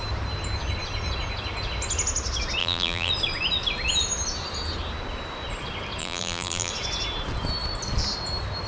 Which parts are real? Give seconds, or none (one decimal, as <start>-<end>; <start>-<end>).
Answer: 0.0-2.6; 3.1-6.0; 6.7-8.7

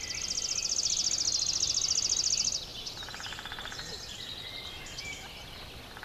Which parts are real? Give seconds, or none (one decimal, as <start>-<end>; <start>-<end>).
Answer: 0.0-6.0

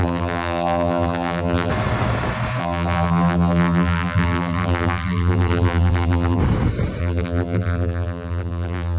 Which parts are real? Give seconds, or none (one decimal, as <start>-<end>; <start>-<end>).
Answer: 1.7-2.6; 6.4-7.0

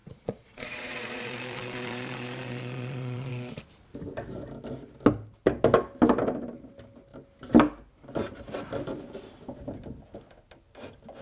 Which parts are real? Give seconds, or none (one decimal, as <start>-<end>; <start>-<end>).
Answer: 3.3-11.2

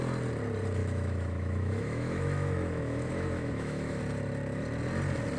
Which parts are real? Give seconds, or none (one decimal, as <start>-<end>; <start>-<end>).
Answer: 0.0-0.8; 4.0-5.4

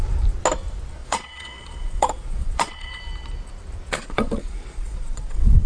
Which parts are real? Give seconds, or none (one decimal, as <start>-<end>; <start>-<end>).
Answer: 0.0-1.0; 3.0-4.0

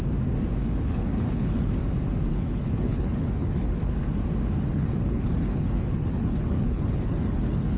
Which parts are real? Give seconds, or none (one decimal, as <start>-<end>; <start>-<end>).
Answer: 0.0-0.6; 1.7-2.3; 4.0-4.7